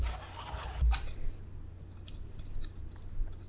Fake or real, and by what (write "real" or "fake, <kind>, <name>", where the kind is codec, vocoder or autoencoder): real